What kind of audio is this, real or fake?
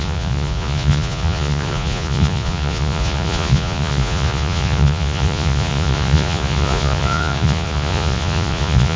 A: fake